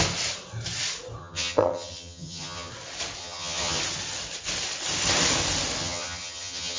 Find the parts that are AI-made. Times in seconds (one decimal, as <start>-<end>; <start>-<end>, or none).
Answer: 1.2-2.7; 3.2-3.8; 5.8-6.8